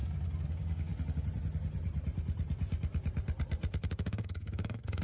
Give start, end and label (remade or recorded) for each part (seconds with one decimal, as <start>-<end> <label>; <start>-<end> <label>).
0.0-0.5 recorded; 0.5-0.9 remade; 0.9-3.9 recorded; 3.9-5.0 remade